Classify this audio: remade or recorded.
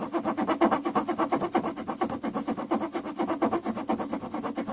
recorded